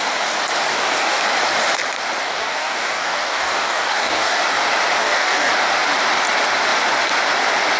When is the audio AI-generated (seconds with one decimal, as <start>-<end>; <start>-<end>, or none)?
0.7-1.2; 2.2-4.4; 5.0-5.5